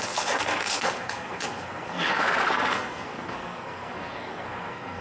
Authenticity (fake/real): fake